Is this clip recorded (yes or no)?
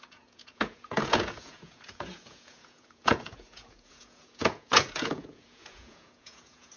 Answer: no